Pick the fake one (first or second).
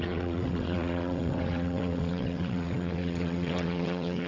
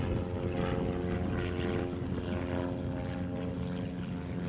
first